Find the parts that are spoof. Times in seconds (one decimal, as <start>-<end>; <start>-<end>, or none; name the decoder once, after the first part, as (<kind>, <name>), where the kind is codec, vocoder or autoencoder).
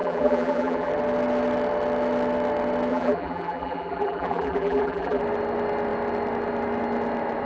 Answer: 0.0-0.9 (vocoder, BigVGAN v2); 2.9-5.2